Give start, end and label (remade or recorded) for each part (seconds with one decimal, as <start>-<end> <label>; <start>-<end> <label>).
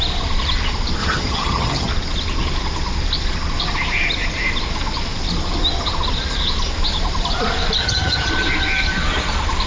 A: 0.0-1.0 recorded; 1.0-1.9 remade; 1.9-7.8 recorded; 7.8-8.3 remade; 8.3-9.7 recorded